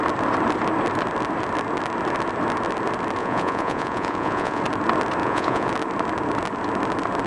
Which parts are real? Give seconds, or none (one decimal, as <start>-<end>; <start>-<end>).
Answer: 0.0-3.2; 4.6-5.2; 5.7-7.3